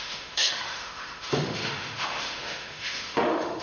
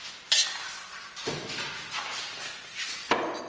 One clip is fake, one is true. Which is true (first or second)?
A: second